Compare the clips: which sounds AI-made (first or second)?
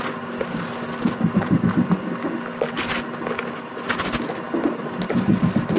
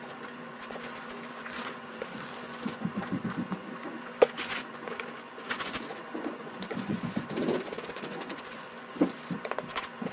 second